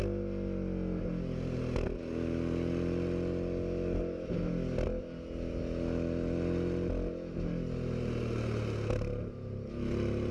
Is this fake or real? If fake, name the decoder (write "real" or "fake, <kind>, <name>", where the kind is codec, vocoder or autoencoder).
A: real